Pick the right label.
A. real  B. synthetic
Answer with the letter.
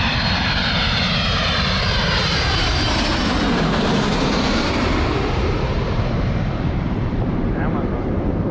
B